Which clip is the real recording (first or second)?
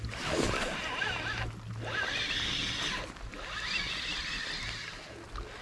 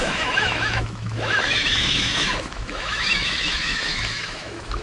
first